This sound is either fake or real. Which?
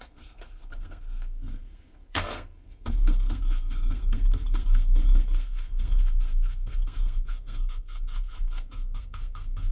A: fake